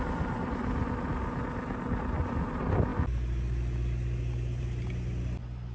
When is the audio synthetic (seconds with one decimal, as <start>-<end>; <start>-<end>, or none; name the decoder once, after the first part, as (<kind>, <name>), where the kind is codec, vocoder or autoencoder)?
none